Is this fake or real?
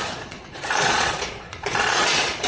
fake